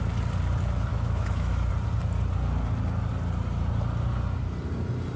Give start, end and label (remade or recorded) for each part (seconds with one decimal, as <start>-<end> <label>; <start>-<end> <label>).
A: 0.0-0.9 recorded; 0.9-1.7 remade; 1.7-5.2 recorded